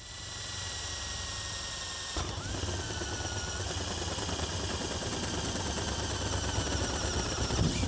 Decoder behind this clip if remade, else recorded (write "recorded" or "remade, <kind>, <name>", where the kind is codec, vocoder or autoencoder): recorded